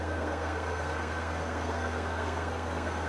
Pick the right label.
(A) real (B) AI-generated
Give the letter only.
B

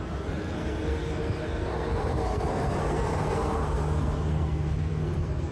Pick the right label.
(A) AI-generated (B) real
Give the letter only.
A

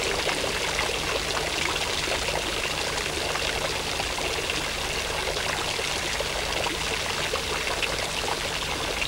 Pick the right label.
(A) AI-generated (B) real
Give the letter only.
B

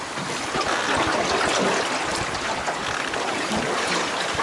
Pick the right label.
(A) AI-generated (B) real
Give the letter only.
B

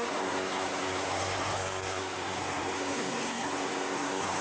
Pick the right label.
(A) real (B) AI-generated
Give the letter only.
B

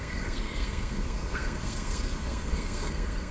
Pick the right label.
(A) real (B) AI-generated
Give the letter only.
B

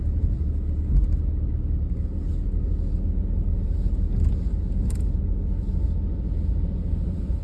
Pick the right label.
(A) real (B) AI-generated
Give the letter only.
A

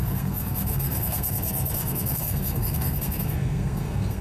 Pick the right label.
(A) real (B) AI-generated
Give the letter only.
B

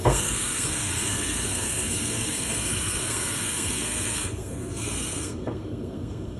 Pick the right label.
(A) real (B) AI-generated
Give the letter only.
B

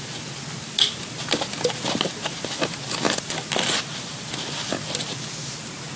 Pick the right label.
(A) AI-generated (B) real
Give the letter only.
B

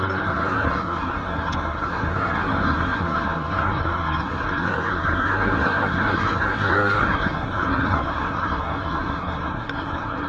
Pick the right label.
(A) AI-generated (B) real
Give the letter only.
A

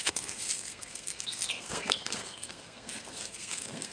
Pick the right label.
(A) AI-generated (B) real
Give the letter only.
A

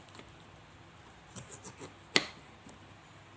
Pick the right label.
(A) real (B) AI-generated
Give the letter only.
A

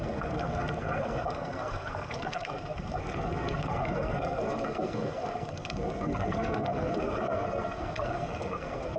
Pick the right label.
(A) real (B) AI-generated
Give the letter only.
B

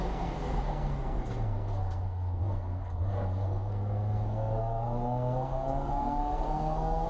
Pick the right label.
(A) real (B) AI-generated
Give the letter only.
B